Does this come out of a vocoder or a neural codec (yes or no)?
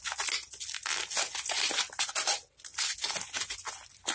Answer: no